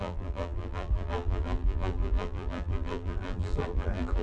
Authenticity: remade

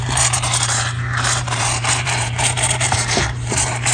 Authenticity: remade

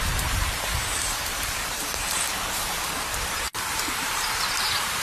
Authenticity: remade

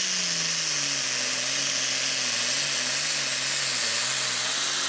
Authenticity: recorded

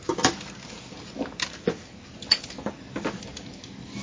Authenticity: recorded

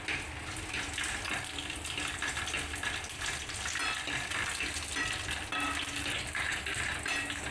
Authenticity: recorded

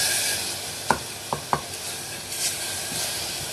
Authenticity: remade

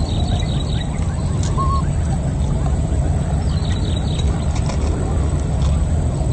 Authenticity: recorded